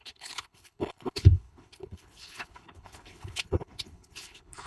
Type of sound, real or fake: fake